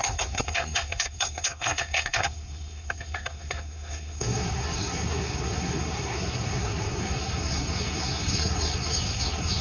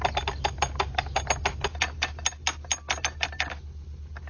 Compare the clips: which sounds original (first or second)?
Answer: second